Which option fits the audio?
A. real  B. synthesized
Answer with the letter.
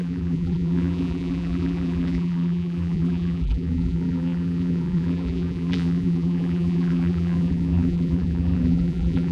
B